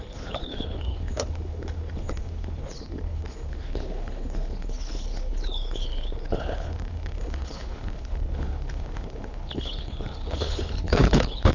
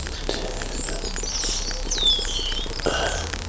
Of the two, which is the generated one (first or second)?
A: first